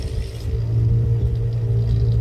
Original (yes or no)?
yes